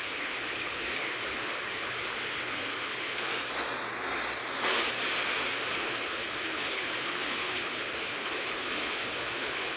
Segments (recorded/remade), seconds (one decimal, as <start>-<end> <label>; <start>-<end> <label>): 0.0-3.3 remade; 3.3-5.7 recorded; 5.7-9.8 remade